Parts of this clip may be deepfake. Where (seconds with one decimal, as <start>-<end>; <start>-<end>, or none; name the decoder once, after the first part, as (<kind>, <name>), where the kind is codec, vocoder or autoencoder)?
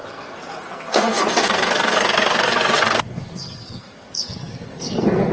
0.0-5.3 (codec, SNAC)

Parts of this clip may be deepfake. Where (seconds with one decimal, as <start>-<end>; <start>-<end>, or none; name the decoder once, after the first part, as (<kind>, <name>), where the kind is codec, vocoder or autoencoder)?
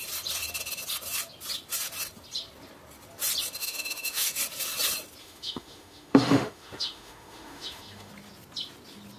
3.6-4.3 (autoencoder, DAC-VAE); 5.2-8.1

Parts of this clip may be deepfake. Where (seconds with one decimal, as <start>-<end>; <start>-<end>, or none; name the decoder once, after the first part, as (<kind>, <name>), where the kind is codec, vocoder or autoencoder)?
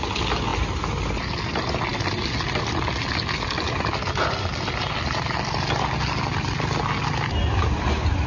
none